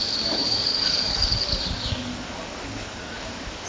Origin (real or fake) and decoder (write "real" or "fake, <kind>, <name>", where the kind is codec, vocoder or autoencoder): fake, codec, DAC